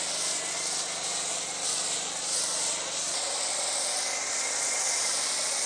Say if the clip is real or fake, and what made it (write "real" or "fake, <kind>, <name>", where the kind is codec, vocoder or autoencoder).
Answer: real